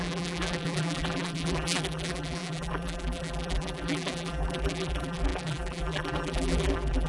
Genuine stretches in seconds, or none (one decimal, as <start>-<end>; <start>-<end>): none